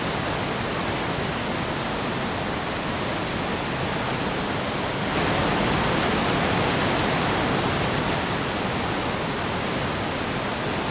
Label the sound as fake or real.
real